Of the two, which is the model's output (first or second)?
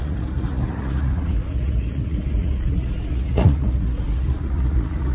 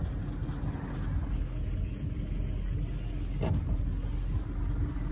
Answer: first